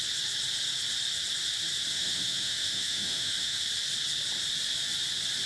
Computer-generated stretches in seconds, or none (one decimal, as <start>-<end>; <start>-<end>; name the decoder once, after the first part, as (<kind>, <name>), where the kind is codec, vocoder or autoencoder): 1.9-3.6 (autoencoder, DAC-VAE)